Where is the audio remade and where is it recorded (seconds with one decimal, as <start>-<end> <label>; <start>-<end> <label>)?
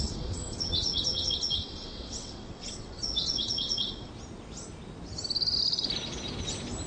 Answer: 0.0-4.1 remade; 4.1-6.9 recorded